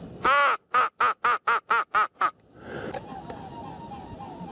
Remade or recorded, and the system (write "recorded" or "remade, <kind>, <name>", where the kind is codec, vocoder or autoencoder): recorded